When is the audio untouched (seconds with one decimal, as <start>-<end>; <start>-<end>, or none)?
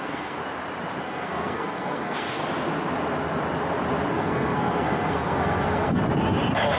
0.4-1.0; 2.4-4.1; 6.0-6.8